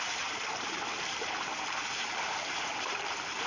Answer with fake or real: real